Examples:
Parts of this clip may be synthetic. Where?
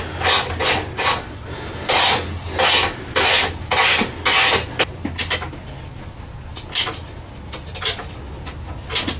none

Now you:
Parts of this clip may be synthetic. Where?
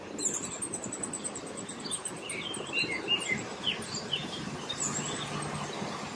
none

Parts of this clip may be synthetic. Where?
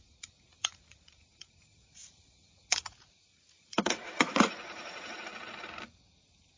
0.0-5.3 (vocoder, Vocos)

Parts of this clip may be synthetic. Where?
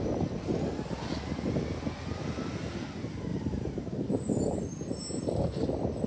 3.3-4.3 (vocoder, BigVGAN v2)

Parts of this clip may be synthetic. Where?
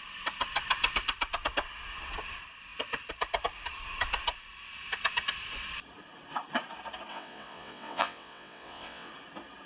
7.1-9.1 (vocoder, WaveNeXt)